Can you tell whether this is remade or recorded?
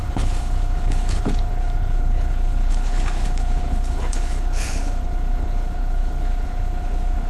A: remade